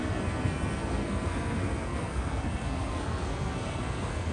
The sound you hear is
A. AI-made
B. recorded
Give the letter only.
A